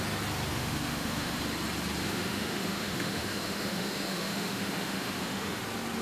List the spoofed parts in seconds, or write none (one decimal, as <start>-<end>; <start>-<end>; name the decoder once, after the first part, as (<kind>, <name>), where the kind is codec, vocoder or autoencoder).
0.5-1.4 (autoencoder, DAC-VAE); 2.0-5.6